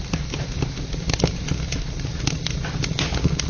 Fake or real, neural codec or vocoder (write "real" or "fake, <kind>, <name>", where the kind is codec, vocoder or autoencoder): real